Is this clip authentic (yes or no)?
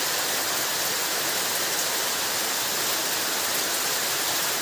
yes